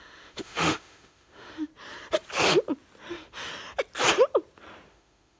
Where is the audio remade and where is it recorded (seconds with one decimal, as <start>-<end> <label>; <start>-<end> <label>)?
0.0-1.7 remade; 1.7-3.1 recorded; 3.1-3.5 remade; 3.5-4.9 recorded; 4.9-5.4 remade